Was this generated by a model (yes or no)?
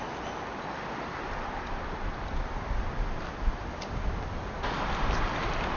yes